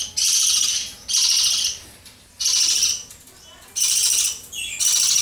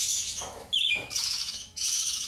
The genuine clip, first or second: first